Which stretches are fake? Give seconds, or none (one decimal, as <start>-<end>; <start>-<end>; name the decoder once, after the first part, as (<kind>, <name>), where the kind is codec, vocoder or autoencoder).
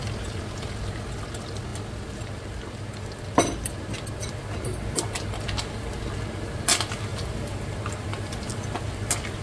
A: 7.1-7.6 (vocoder, BigVGAN v2)